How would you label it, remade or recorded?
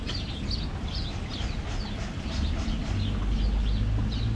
recorded